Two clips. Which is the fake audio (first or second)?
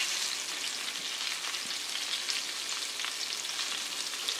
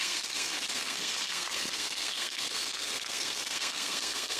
second